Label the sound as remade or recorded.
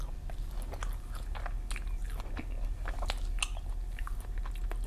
recorded